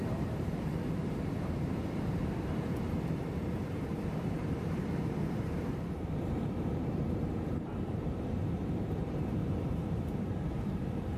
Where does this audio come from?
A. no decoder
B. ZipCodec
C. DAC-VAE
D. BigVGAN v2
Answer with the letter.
D